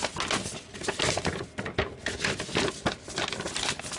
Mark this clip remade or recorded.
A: recorded